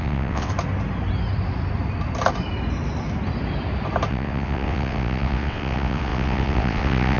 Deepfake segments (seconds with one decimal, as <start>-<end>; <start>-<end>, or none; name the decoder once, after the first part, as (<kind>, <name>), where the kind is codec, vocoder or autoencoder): 0.0-0.5 (vocoder, WaveNeXt); 4.1-7.2